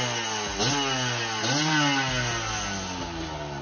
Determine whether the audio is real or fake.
real